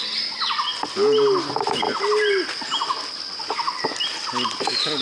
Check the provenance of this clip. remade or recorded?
recorded